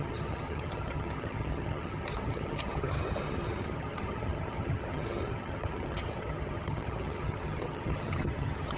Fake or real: fake